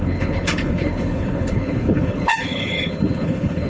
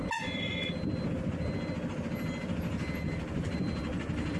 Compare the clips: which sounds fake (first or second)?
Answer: first